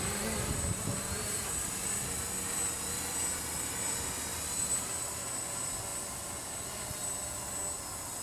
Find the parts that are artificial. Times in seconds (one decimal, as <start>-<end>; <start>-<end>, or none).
0.9-1.9; 4.3-4.9